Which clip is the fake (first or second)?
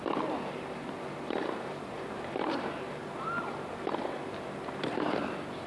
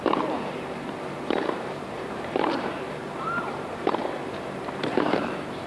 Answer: second